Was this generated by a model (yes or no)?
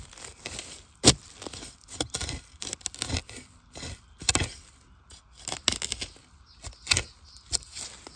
no